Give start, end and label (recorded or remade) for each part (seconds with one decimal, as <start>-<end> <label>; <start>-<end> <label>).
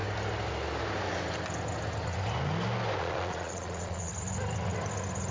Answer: 0.0-3.0 recorded; 3.0-4.1 remade; 4.1-5.3 recorded